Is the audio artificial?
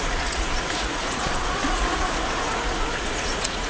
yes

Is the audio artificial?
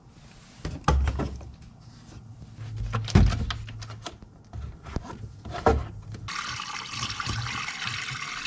no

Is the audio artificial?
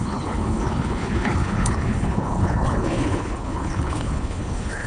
yes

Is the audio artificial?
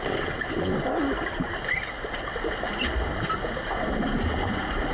no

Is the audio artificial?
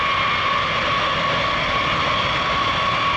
no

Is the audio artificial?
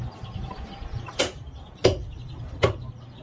yes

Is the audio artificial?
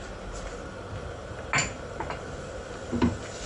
no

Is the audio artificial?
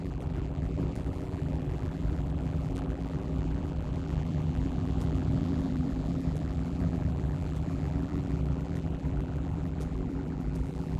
yes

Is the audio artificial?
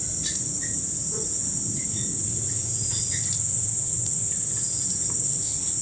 yes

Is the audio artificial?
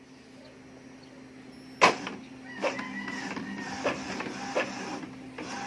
no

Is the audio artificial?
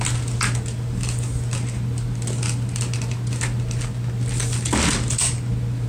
no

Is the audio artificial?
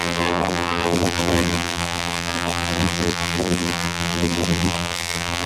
yes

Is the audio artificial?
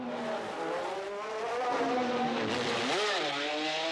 no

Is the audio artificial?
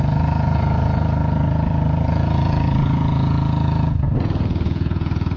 yes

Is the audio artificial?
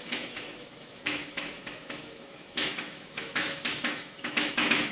yes